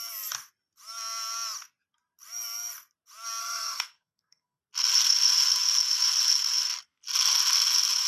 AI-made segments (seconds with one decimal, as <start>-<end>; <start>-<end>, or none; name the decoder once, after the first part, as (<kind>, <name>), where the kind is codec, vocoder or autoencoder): 3.4-4.6 (codec, SNAC)